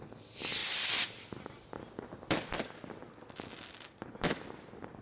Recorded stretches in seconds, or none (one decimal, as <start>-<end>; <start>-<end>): 0.0-0.6; 3.6-5.0